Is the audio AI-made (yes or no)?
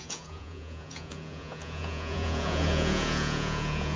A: yes